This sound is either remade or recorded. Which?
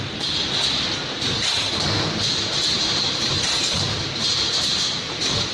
recorded